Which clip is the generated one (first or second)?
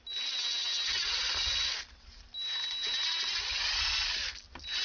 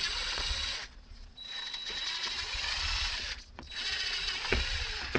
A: second